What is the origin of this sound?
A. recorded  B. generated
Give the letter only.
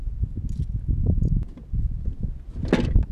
A